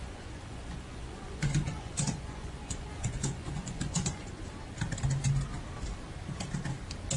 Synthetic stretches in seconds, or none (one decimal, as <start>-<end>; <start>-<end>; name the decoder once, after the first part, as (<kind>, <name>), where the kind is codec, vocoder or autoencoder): 0.0-4.3 (vocoder, Vocos)